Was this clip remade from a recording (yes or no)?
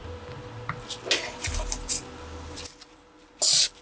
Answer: no